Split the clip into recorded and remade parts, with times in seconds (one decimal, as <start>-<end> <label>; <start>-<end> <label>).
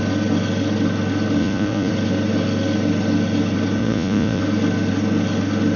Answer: 0.0-1.4 recorded; 1.4-1.9 remade; 1.9-3.8 recorded; 3.8-4.4 remade; 4.4-5.8 recorded